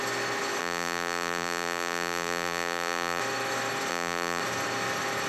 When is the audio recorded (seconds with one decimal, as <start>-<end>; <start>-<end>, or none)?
0.0-0.6; 3.2-3.9; 4.4-5.3